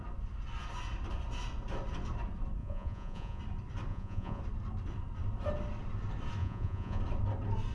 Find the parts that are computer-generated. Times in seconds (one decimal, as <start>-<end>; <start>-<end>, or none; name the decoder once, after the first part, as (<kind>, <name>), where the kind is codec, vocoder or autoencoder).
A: 2.6-3.4 (vocoder, Vocos); 3.9-4.4; 6.4-7.0